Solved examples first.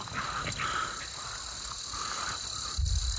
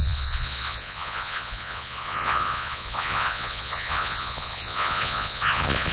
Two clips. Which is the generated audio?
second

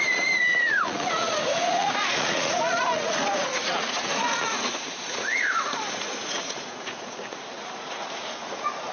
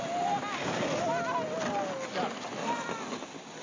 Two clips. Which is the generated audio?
first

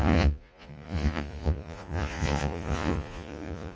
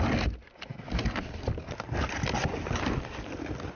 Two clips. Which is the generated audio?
first